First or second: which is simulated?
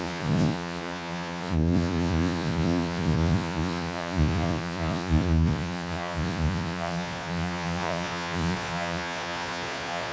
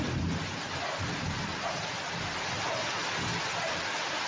first